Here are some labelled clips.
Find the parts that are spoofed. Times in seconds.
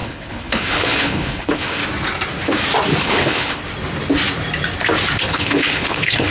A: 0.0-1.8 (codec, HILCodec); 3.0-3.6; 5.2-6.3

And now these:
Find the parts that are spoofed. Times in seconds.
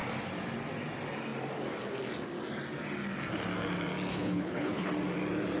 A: 4.1-4.9 (codec, HILCodec)